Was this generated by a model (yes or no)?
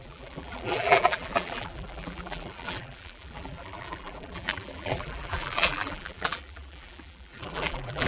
yes